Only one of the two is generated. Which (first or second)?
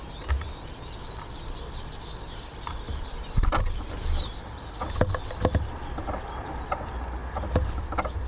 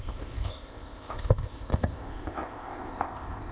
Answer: second